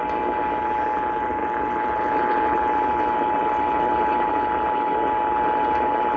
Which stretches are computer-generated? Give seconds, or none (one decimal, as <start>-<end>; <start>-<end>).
none